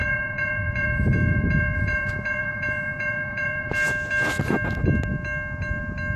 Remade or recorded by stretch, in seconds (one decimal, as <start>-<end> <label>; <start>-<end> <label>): 0.0-3.7 remade; 3.7-6.2 recorded